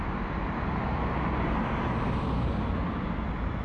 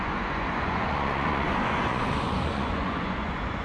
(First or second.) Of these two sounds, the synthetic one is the second